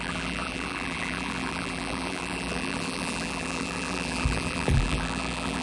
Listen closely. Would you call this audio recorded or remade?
remade